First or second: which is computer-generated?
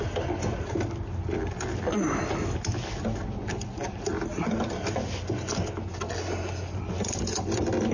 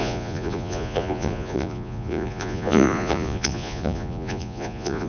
second